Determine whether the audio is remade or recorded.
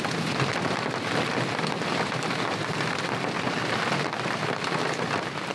recorded